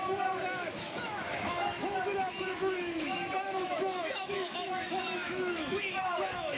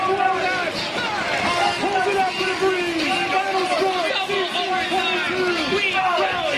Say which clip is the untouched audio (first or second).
second